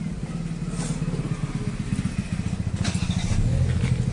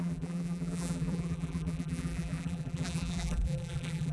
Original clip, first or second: first